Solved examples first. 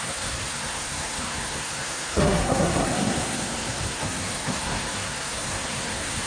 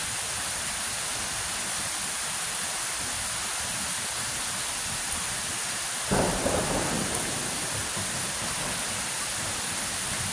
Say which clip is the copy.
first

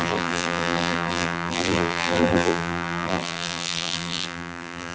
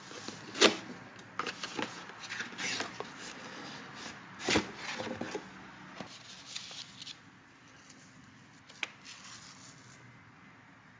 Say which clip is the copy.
first